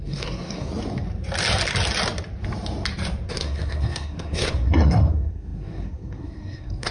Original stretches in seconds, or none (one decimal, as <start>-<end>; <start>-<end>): 0.7-3.3